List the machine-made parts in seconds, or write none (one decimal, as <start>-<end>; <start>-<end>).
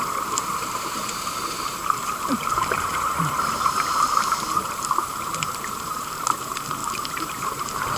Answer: 0.0-8.0